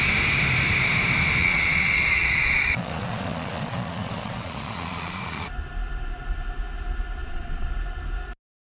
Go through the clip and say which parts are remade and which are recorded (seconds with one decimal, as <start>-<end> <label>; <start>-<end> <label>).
0.0-1.4 recorded; 1.4-5.5 remade; 5.5-7.2 recorded; 7.2-7.7 remade; 7.7-8.7 recorded